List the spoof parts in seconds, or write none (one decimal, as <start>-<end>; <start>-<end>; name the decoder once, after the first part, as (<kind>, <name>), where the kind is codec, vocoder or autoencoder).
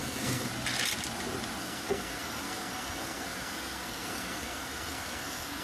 0.0-0.5 (codec, SNAC); 1.6-5.6